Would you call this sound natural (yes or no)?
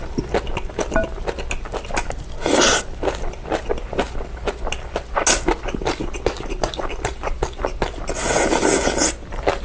yes